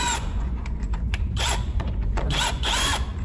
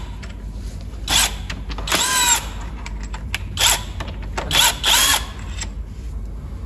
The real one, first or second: second